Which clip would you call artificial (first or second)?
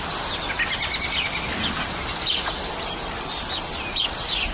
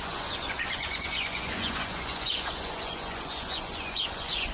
second